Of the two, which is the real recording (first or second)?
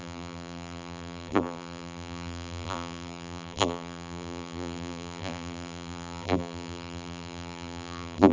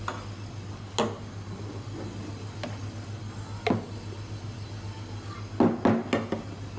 second